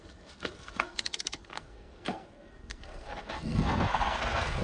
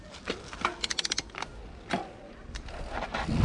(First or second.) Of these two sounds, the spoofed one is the first